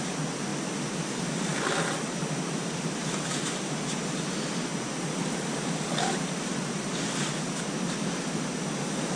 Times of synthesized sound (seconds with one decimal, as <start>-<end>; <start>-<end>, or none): 0.5-1.1; 1.5-3.0; 4.7-7.3